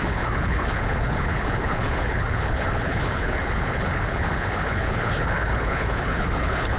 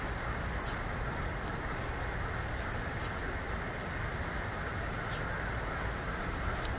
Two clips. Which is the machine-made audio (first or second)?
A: first